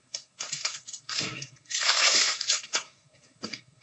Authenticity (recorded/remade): remade